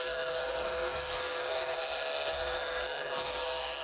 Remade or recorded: remade